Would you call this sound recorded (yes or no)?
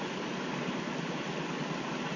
yes